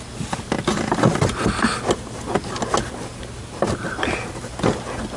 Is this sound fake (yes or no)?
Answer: no